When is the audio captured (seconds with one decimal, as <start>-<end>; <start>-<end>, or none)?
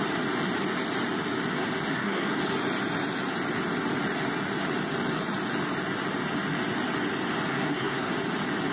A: 0.0-1.9; 2.4-7.5; 8.1-8.7